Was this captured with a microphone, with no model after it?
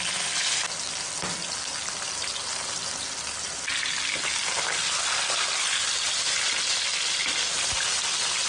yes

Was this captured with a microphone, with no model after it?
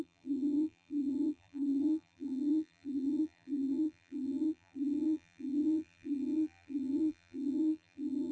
no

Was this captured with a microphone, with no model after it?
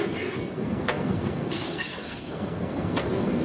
no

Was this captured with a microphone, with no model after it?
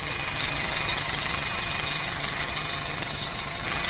no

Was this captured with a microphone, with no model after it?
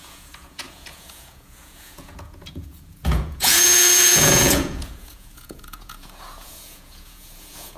no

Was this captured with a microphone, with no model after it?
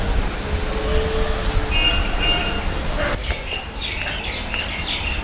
yes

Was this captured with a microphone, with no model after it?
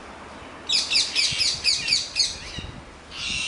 yes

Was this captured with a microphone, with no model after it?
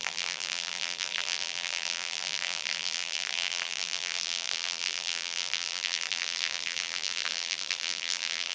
no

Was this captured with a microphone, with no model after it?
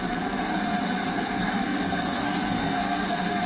no